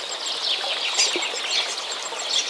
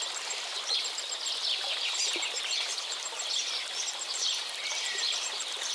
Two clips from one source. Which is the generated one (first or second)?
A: second